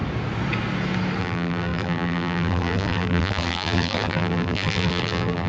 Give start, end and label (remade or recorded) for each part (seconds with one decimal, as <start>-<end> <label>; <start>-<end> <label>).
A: 0.0-1.2 recorded; 1.2-5.5 remade